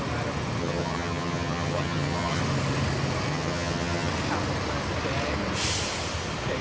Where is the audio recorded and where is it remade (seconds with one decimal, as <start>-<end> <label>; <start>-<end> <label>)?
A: 0.0-0.6 recorded; 0.6-2.4 remade; 2.4-3.3 recorded; 3.3-4.1 remade; 4.1-6.6 recorded